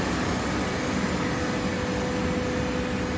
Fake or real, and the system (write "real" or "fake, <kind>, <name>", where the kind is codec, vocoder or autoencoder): real